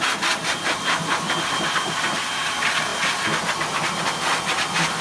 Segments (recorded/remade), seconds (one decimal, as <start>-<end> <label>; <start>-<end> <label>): 0.0-5.0 recorded